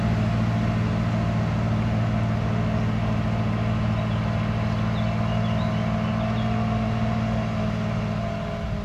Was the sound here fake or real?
real